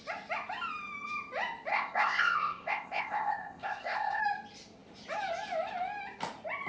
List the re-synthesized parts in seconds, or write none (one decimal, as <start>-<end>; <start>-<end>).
1.7-4.2